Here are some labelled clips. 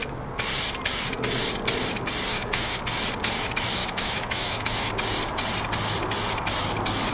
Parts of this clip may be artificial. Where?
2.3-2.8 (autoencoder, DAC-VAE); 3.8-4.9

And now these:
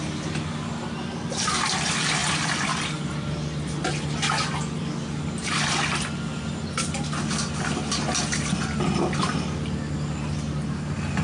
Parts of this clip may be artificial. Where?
none

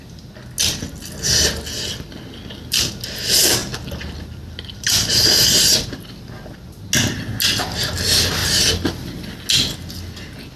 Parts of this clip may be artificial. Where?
none

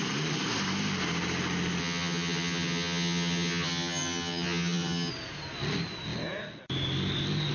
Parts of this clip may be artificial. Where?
1.8-5.1 (vocoder, HiFi-GAN)